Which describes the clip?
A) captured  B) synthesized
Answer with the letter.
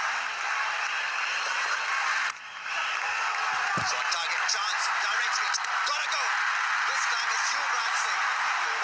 A